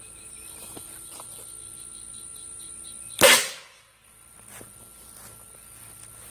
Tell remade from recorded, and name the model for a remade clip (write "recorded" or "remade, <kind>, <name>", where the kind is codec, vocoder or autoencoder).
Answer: recorded